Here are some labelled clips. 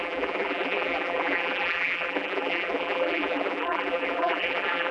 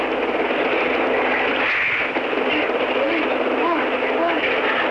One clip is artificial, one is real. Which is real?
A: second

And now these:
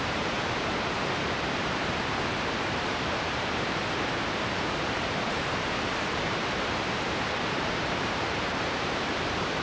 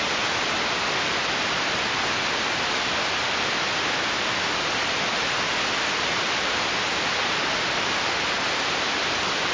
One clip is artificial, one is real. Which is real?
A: second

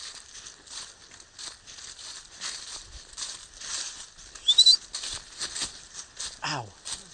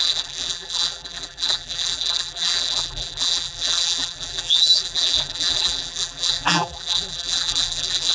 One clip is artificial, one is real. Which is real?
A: first